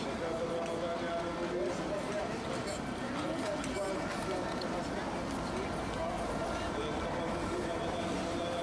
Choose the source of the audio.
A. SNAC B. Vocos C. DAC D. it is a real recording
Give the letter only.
D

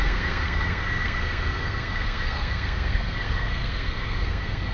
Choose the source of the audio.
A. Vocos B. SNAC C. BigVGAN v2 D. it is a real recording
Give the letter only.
B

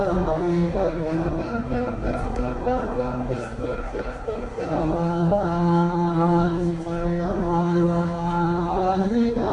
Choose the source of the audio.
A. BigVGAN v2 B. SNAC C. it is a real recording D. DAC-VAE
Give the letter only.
B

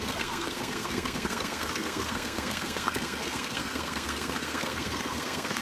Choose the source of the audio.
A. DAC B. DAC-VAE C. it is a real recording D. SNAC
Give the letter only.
D